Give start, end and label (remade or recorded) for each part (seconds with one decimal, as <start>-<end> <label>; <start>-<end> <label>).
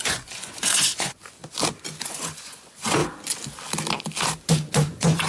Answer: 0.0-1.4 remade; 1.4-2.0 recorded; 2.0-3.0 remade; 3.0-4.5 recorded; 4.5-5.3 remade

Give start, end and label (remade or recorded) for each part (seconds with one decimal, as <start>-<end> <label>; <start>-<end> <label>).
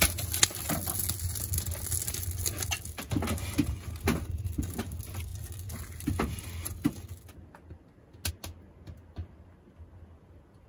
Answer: 0.0-10.7 recorded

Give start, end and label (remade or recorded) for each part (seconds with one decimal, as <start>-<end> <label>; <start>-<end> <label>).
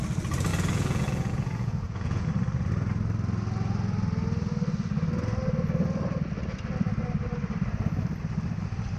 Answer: 0.0-0.5 recorded; 0.5-2.3 remade; 2.3-9.0 recorded